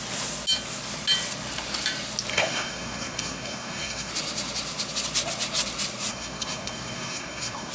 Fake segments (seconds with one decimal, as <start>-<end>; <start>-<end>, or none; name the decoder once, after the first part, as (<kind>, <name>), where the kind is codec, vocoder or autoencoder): 2.3-4.1 (codec, SNAC); 6.1-7.7